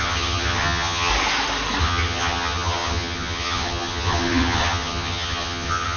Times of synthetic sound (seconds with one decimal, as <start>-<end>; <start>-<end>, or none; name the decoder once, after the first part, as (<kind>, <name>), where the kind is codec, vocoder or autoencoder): 0.0-1.1 (vocoder, HiFi-GAN); 1.8-6.0

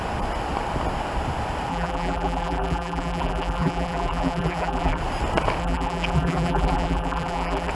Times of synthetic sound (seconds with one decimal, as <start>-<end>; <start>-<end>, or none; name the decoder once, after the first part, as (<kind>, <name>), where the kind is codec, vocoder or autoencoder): 1.7-5.0 (vocoder, BigVGAN v2); 5.6-7.7

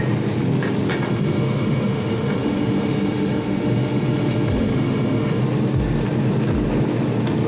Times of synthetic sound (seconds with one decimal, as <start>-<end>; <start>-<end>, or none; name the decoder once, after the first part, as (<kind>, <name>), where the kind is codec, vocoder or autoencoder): 0.9-5.4 (autoencoder, DAC-VAE)